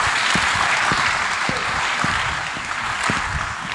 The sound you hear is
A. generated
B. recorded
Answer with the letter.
B